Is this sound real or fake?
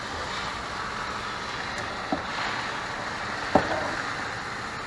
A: real